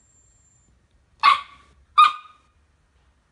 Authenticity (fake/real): real